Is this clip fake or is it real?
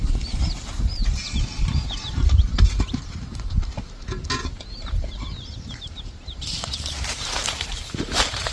fake